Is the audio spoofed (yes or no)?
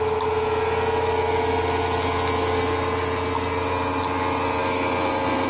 no